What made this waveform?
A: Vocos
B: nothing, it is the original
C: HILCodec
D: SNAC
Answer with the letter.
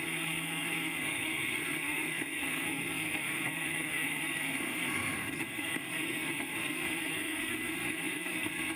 D